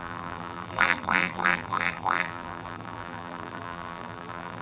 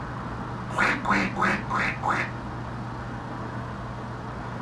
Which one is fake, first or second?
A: first